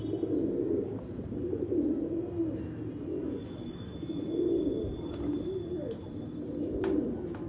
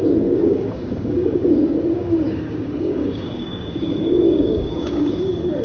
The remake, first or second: second